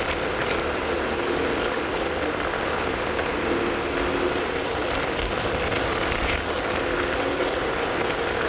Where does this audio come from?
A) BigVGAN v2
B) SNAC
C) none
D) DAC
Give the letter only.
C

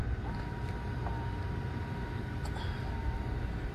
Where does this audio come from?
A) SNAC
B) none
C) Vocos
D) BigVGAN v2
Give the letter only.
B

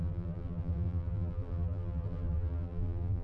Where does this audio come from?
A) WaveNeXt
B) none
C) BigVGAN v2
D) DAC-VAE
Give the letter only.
C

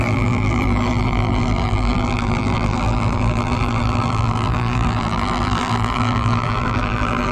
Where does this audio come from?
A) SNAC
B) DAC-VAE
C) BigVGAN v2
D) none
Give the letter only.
C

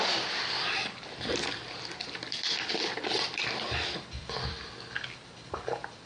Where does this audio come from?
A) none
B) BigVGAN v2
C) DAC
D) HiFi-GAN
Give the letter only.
A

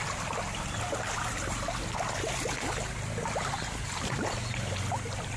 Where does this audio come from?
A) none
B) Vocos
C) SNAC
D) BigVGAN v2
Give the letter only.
A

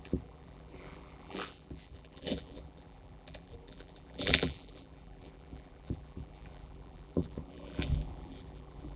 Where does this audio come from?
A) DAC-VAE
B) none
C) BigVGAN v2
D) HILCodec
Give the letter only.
C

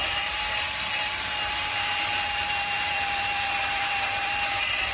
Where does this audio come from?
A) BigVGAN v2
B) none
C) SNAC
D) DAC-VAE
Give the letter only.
A